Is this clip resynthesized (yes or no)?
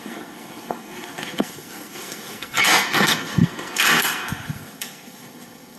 yes